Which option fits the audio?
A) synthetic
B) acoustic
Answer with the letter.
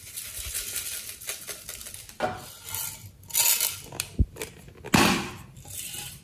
B